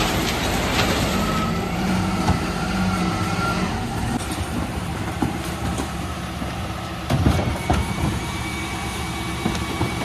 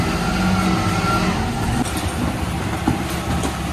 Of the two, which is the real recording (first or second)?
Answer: second